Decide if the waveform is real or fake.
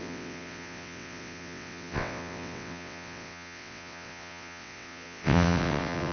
fake